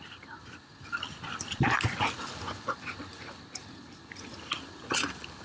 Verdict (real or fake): real